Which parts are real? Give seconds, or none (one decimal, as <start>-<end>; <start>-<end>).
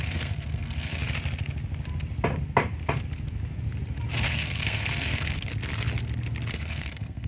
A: 1.0-4.1; 5.5-6.5